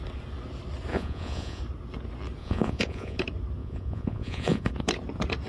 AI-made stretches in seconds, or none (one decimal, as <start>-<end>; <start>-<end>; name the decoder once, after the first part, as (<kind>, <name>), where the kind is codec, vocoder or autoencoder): 0.9-1.6 (vocoder, Vocos); 2.4-3.2; 3.6-4.7